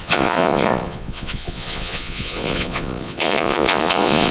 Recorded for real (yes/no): no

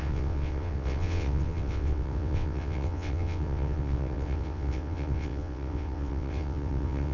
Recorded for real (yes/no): no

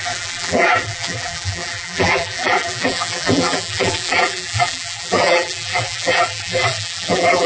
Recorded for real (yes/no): no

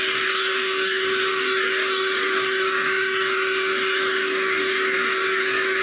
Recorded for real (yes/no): no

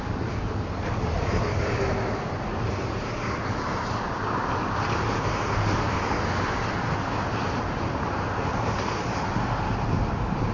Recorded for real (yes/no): yes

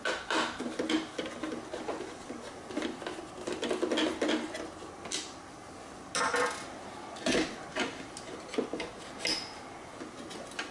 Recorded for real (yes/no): yes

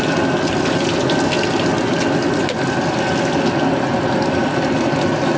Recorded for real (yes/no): yes